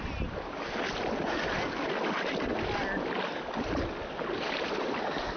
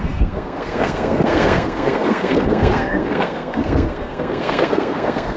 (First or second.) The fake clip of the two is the second